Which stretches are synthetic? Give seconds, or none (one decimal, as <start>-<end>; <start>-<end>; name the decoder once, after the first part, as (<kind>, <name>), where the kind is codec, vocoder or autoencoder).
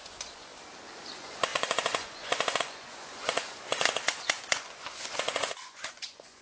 0.0-0.5 (vocoder, Vocos); 1.1-6.4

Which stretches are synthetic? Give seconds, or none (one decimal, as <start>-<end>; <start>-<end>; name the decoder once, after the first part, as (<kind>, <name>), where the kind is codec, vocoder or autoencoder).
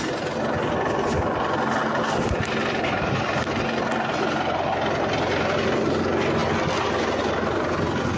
none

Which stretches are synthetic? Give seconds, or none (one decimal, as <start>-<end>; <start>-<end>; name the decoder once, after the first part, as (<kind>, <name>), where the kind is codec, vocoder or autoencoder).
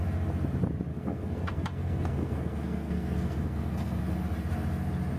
0.9-4.0 (codec, SNAC)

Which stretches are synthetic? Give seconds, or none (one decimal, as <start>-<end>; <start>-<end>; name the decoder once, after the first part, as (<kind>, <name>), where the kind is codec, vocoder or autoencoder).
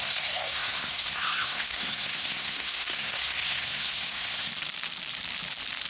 0.0-4.5 (codec, SNAC)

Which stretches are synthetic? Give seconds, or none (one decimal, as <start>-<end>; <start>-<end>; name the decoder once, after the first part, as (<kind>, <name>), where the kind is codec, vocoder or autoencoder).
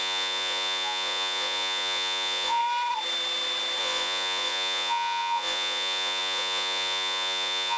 0.0-2.6 (vocoder, Vocos); 3.8-7.8